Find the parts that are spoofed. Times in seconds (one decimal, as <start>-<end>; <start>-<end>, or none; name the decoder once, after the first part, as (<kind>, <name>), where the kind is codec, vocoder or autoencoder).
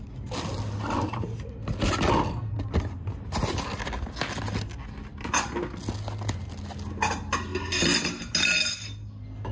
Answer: none